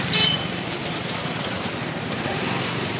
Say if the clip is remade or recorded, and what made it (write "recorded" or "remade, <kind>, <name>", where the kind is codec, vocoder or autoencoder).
remade, vocoder, BigVGAN v2